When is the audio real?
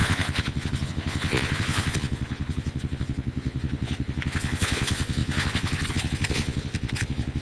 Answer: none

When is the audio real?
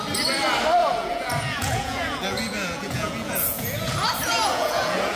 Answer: 0.0-0.8; 3.9-4.5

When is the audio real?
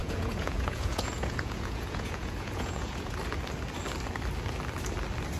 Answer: 3.2-5.4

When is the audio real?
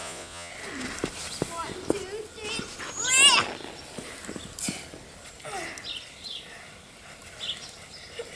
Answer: 0.5-8.4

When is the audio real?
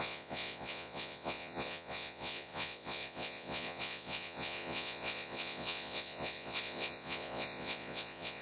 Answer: none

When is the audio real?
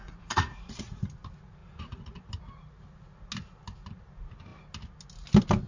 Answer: 1.0-1.6; 2.3-5.7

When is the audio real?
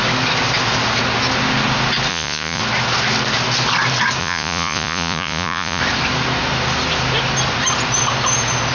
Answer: 0.0-2.1; 2.6-4.2; 5.8-8.7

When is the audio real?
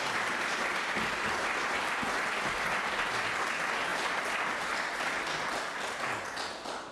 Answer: 0.0-6.9